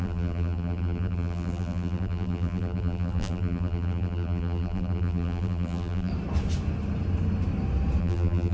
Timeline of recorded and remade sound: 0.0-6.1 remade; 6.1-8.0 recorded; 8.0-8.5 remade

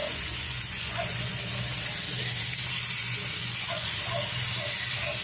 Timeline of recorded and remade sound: 0.0-1.4 remade; 1.4-3.0 recorded; 3.0-4.0 remade; 4.0-5.2 recorded

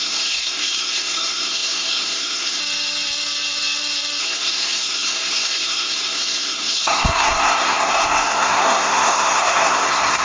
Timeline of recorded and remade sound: 0.0-2.6 remade; 2.6-4.2 recorded; 4.2-10.2 remade

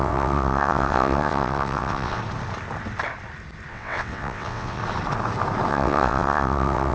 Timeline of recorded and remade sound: 0.0-2.2 remade; 2.2-3.7 recorded; 3.7-4.8 remade; 4.8-5.7 recorded; 5.7-6.9 remade

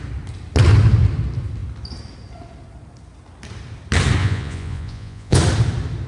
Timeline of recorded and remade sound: 0.0-4.2 recorded; 4.2-5.4 remade; 5.4-6.1 recorded

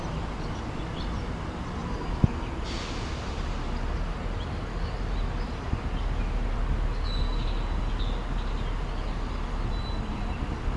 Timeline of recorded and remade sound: 0.0-10.8 recorded

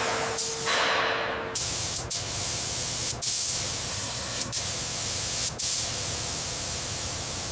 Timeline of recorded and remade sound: 0.0-3.9 recorded; 3.9-4.6 remade; 4.6-7.5 recorded